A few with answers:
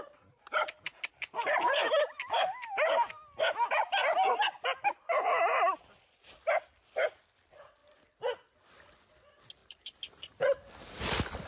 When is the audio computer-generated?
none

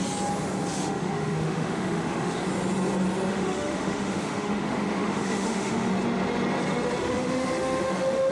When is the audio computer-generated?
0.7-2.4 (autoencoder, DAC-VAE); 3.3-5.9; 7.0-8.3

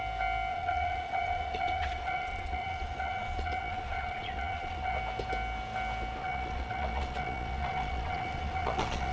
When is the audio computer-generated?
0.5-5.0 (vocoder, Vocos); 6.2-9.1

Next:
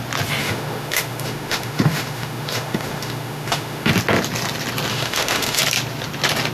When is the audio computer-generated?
0.4-3.9 (autoencoder, DAC-VAE); 4.9-5.6